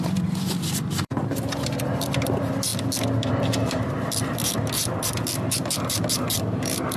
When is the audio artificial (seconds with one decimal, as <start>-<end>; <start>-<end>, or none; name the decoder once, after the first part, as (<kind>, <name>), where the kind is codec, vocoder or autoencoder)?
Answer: 0.0-2.7 (vocoder, BigVGAN v2); 3.2-7.0